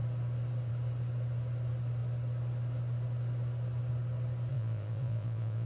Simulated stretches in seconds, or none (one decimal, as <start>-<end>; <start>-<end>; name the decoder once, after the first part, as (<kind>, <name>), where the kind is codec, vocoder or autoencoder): 4.5-5.7 (vocoder, Vocos)